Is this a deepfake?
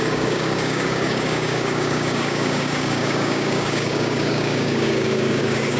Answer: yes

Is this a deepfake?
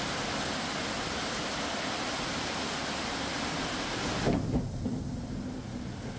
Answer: no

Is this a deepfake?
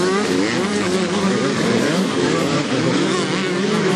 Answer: yes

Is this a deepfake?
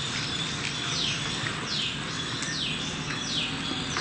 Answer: no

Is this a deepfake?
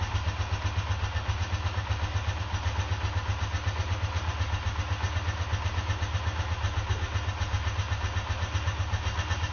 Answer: no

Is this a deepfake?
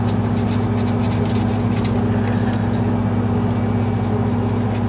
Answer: no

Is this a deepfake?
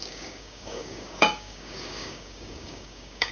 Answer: yes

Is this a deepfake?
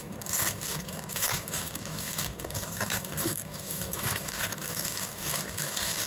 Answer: yes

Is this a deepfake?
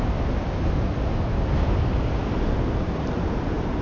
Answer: no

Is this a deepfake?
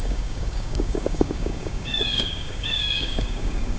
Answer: yes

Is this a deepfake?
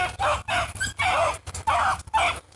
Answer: no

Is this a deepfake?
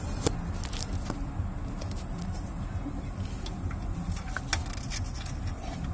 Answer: no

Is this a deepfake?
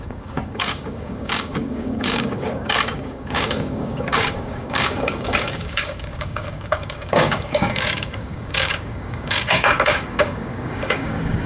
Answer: yes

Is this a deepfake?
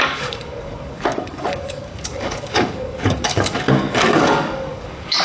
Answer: yes